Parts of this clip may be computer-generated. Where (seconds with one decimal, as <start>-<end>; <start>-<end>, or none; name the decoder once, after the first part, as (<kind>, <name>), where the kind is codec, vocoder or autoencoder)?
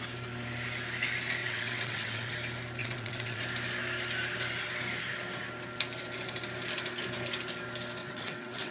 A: 1.4-2.3 (vocoder, WaveNeXt); 2.8-3.4; 8.0-8.7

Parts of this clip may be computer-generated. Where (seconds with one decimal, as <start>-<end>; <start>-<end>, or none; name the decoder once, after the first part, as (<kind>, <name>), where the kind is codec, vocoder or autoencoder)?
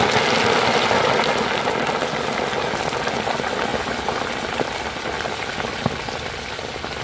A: none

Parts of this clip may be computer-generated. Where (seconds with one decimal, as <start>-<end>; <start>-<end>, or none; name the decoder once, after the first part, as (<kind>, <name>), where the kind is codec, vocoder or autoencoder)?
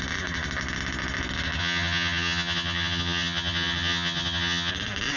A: 1.6-4.7 (vocoder, HiFi-GAN)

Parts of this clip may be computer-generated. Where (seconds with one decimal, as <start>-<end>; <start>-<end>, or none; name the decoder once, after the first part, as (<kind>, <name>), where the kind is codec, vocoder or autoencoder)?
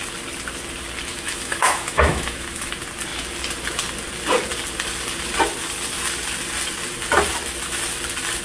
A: 1.1-2.7 (autoencoder, DAC-VAE)